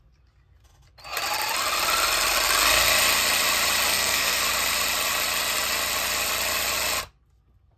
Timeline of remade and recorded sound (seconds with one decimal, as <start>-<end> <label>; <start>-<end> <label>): 0.0-3.9 recorded; 3.9-4.4 remade; 4.4-7.8 recorded

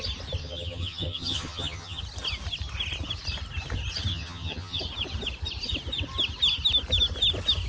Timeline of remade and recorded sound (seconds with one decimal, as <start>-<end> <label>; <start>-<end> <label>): 0.0-0.4 recorded; 0.4-2.0 remade; 2.0-4.1 recorded; 4.1-4.8 remade; 4.8-7.7 recorded

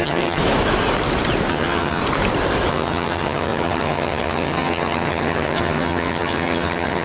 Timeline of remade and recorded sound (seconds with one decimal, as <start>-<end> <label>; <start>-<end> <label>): 0.0-0.4 remade; 0.4-1.5 recorded; 1.5-2.0 remade; 2.0-2.7 recorded; 2.7-7.0 remade

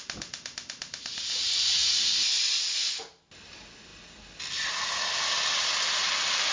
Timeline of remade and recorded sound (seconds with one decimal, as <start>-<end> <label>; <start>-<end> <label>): 0.0-6.5 recorded

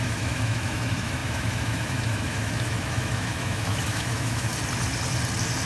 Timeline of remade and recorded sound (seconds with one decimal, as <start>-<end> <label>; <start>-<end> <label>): 0.0-4.5 remade; 4.5-5.7 recorded

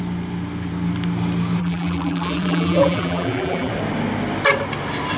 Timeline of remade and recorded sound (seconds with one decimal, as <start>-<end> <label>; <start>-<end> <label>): 0.0-1.6 recorded; 1.6-3.7 remade; 3.7-5.2 recorded